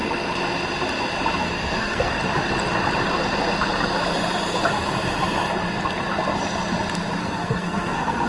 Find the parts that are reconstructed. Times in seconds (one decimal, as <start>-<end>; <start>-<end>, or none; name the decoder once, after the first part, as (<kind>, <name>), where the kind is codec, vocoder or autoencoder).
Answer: 1.4-2.2 (codec, SNAC); 7.2-8.3